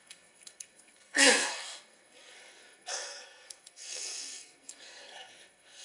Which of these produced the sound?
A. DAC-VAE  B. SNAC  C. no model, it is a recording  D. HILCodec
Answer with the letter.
B